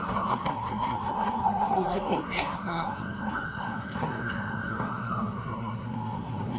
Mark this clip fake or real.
fake